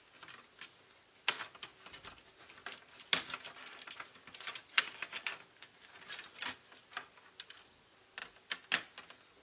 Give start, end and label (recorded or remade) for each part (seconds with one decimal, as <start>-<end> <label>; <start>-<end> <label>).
0.0-9.4 recorded